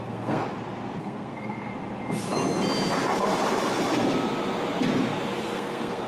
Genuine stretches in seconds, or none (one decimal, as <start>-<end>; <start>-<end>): 0.4-1.0; 1.7-5.4